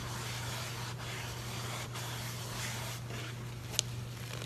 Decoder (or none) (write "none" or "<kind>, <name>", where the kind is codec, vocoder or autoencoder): none